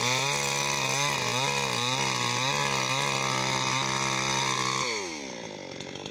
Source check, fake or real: real